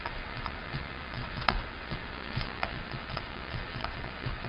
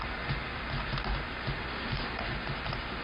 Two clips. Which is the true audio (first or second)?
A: second